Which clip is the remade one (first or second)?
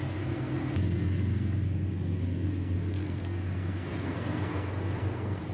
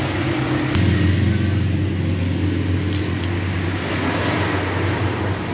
first